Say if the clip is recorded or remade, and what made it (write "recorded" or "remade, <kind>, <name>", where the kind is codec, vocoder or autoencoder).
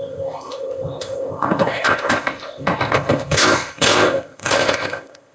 remade, codec, ZipCodec